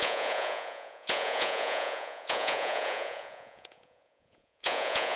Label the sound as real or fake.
fake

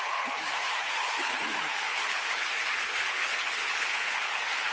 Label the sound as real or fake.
fake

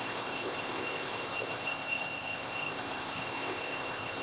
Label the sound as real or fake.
fake